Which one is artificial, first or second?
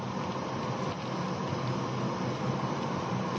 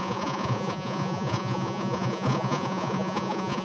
second